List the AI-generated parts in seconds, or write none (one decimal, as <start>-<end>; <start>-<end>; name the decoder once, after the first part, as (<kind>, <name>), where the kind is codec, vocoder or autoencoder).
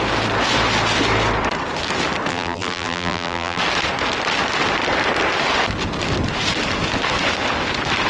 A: 2.3-3.6 (vocoder, BigVGAN v2)